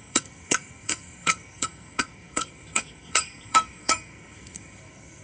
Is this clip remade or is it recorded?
remade